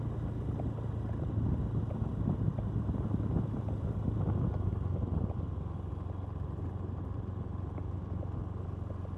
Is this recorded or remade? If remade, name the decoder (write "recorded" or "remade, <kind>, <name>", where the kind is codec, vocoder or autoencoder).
recorded